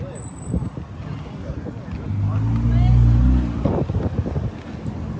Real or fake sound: real